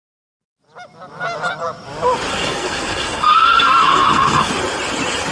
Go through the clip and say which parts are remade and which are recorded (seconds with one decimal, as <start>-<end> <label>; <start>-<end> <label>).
0.0-2.3 recorded; 2.3-4.5 remade; 4.5-5.3 recorded